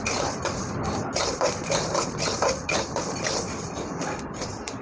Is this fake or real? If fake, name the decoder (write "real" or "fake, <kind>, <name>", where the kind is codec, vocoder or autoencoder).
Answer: fake, vocoder, BigVGAN v2